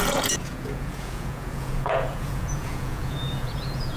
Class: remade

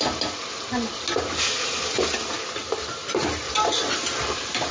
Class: recorded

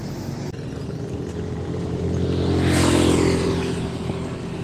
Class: recorded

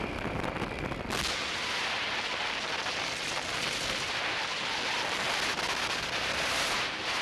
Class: recorded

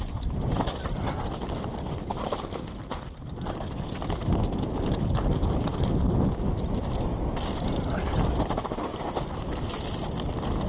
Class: recorded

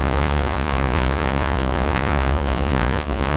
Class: remade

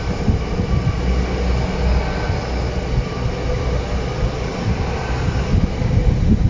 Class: recorded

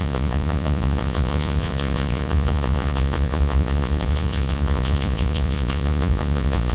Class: remade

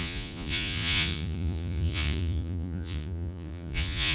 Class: remade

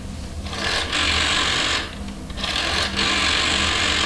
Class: recorded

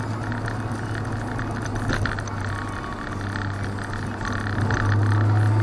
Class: recorded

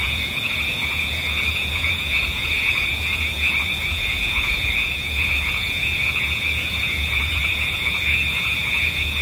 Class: remade